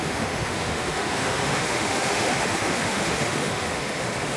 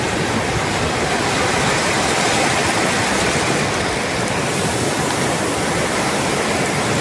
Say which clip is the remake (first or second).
first